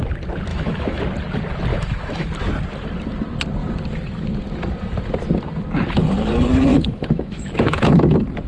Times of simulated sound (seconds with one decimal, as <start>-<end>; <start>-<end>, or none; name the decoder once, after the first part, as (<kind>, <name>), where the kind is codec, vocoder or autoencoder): 0.5-1.0 (autoencoder, DAC-VAE); 1.7-2.3; 6.7-8.0